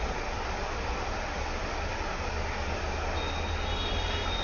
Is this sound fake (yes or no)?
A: no